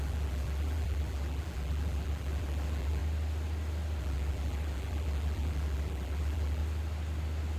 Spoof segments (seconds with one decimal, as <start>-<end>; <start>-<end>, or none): 0.0-3.0; 4.0-6.6